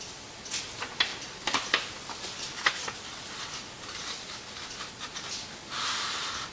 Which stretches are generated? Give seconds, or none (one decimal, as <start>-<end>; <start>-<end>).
none